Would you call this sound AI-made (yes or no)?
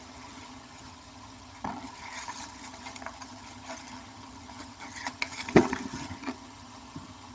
yes